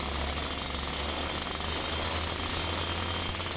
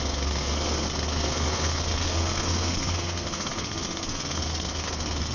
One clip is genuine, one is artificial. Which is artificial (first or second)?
second